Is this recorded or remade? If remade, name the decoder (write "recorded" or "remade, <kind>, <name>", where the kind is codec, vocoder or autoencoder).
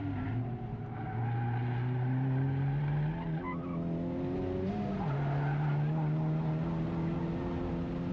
recorded